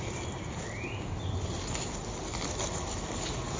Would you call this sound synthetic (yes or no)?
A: no